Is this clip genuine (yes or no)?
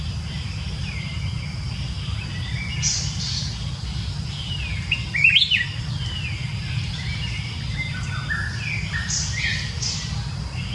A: yes